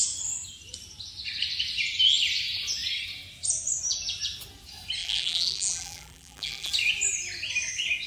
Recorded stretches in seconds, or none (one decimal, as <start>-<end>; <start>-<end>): 0.0-5.0; 6.7-8.1